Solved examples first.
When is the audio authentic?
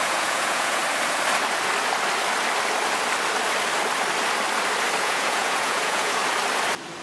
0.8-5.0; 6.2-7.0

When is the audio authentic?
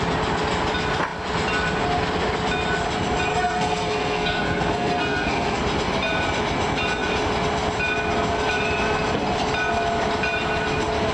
0.0-3.3; 5.6-11.1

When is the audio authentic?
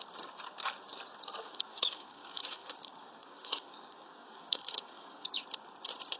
0.0-1.7; 5.4-6.2